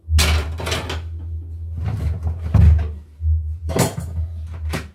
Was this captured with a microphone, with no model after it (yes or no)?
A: yes